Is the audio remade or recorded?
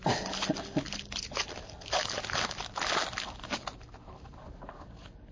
recorded